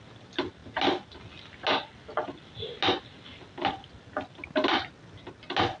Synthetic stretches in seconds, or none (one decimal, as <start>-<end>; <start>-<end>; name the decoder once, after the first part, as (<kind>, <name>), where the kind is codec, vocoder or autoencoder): none